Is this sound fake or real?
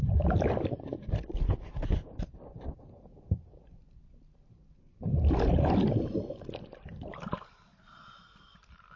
real